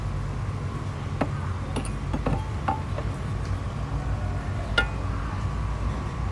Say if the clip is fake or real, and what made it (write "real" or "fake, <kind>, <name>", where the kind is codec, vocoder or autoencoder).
real